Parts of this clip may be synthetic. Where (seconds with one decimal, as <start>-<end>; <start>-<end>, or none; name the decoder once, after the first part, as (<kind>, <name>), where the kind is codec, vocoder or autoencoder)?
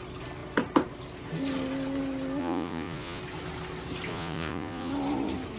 2.4-3.2 (vocoder, Vocos); 4.1-4.9